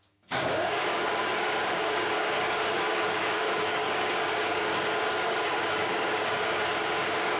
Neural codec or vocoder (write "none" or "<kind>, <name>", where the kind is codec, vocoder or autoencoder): codec, DAC